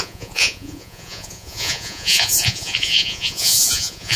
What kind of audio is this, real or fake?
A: fake